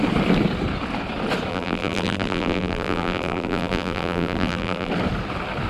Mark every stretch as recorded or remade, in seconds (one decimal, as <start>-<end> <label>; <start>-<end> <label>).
0.0-1.5 recorded; 1.5-4.9 remade; 4.9-5.7 recorded